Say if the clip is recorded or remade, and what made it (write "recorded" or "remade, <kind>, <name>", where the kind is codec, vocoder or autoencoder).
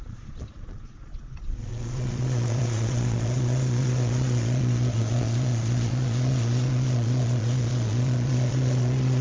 remade, vocoder, Vocos